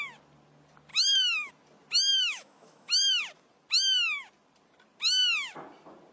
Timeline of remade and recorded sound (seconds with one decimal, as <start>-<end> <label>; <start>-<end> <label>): 0.0-0.9 recorded; 0.9-1.5 remade; 1.5-2.1 recorded; 2.1-3.2 remade; 3.2-6.1 recorded